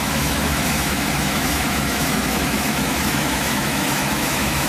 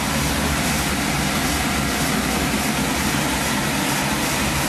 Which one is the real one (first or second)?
second